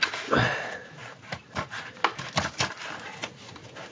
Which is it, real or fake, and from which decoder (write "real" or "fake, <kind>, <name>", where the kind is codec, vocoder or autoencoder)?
real